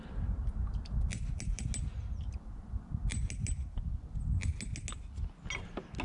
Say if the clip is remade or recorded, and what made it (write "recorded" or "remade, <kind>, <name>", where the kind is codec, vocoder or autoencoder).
recorded